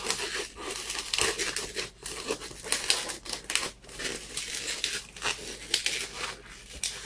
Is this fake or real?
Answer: real